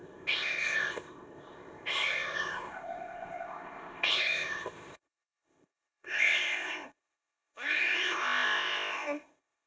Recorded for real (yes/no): no